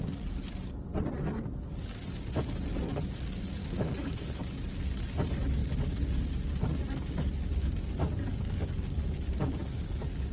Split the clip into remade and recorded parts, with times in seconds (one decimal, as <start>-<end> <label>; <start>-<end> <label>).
0.0-3.6 recorded; 3.6-4.3 remade; 4.3-8.3 recorded; 8.3-10.3 remade